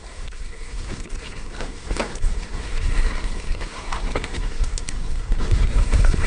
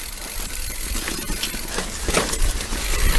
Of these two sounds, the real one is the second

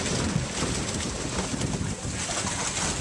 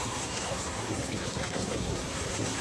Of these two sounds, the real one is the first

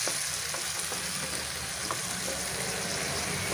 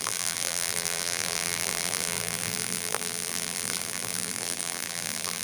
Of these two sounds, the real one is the first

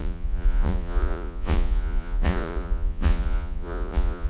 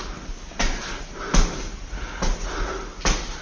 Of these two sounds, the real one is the second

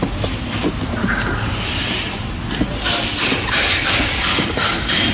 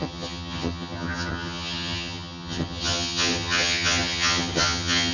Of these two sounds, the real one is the first